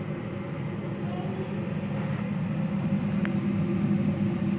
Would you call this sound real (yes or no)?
yes